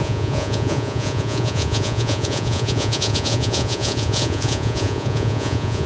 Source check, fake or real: fake